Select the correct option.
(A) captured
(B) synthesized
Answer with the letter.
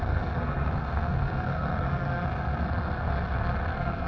B